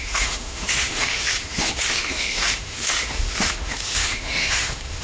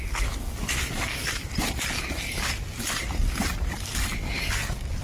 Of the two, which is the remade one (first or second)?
first